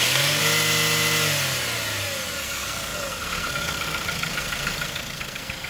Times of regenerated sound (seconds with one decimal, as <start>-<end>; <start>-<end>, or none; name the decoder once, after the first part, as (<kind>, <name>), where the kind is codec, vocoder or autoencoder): 0.0-0.4 (codec, SNAC); 2.4-5.7